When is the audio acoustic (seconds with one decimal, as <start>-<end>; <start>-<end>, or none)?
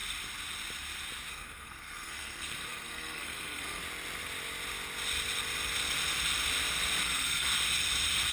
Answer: 0.0-1.3; 3.8-7.0; 7.5-8.3